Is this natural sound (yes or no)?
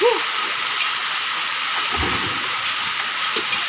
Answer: yes